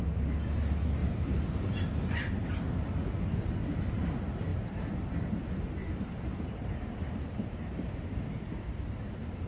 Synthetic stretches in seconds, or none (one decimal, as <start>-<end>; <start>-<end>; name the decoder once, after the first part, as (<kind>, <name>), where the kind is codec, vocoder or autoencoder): 1.0-2.5 (vocoder, BigVGAN v2); 4.5-5.1; 5.8-9.0